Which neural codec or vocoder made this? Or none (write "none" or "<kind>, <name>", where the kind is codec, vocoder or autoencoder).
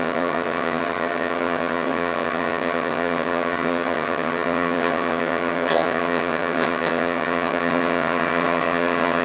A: vocoder, HiFi-GAN